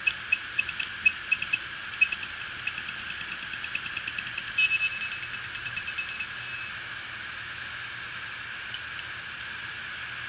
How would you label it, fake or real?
real